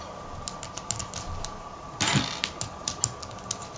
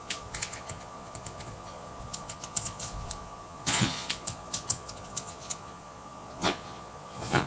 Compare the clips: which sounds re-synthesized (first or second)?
second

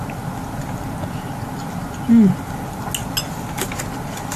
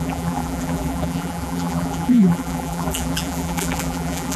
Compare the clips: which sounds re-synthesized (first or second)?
second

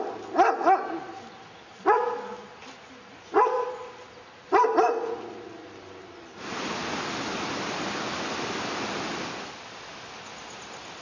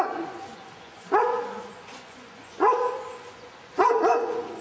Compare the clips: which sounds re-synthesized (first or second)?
second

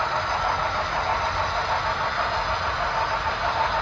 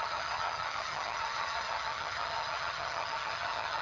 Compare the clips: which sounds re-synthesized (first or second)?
second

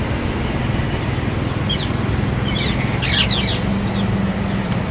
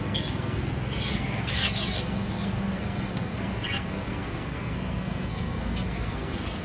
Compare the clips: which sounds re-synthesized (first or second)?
second